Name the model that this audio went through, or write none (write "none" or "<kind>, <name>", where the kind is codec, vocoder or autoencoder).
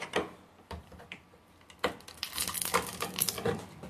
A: none